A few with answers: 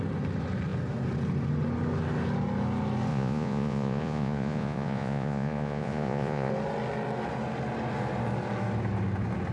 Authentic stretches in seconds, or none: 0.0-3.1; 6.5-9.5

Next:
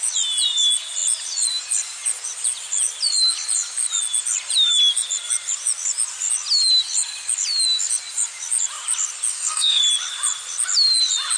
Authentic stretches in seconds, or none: 0.0-9.3; 9.8-11.4

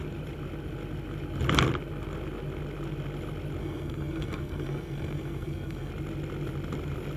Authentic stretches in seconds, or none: 0.0-3.6; 5.9-7.2

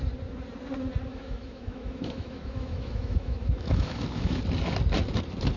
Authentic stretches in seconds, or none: 0.0-1.1; 4.4-5.6

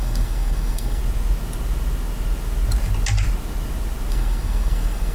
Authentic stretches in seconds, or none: 1.0-4.1

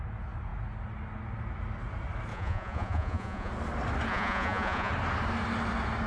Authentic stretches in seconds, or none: 0.0-2.3; 3.5-4.1; 4.9-6.1

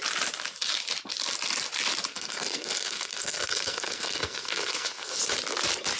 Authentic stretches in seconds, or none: 0.0-2.1; 5.2-6.0